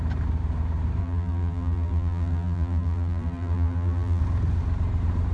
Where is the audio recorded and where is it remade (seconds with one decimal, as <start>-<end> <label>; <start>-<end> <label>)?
0.0-1.0 recorded; 1.0-4.2 remade; 4.2-5.3 recorded